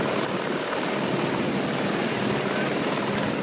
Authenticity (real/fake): real